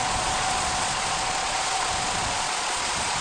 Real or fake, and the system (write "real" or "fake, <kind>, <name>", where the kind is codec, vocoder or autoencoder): fake, vocoder, Vocos